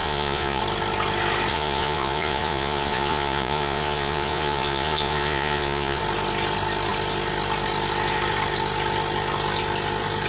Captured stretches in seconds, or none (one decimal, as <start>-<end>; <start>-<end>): 0.6-1.5; 6.0-10.3